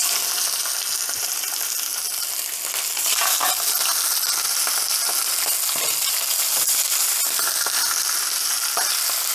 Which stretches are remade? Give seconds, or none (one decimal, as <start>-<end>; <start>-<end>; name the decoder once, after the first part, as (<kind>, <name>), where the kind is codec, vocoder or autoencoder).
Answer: none